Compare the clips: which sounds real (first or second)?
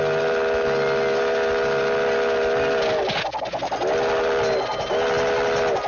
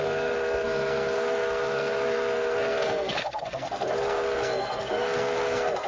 first